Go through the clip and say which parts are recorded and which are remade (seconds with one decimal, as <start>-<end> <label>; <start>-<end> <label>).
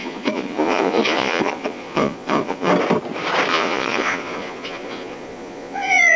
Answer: 0.0-2.7 remade; 2.7-3.5 recorded; 3.5-6.2 remade